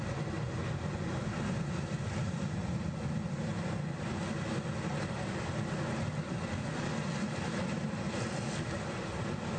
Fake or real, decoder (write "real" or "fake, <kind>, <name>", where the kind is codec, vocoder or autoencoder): real